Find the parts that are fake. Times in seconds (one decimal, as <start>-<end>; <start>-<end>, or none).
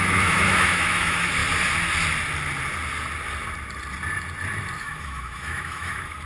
0.0-1.4; 4.8-6.3